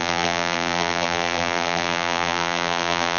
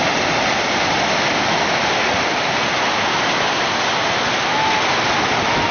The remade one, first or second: first